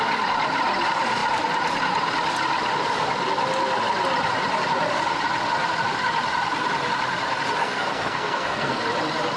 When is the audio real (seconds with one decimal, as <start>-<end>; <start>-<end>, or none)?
0.0-7.6; 8.8-9.4